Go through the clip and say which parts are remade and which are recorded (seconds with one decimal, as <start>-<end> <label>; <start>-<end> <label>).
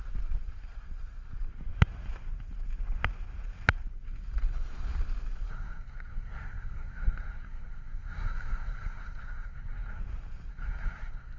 0.0-5.5 recorded; 5.5-10.0 remade; 10.0-10.5 recorded; 10.5-11.4 remade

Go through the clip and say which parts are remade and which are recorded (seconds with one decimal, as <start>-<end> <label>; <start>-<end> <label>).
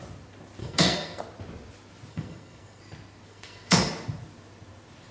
0.0-0.6 recorded; 0.6-1.2 remade; 1.2-2.1 recorded; 2.1-2.8 remade; 2.8-3.3 recorded; 3.3-3.9 remade; 3.9-5.1 recorded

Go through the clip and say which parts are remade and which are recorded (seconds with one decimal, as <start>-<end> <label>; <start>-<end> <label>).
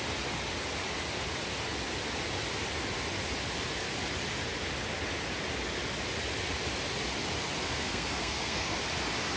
0.0-7.6 recorded; 7.6-8.8 remade; 8.8-9.4 recorded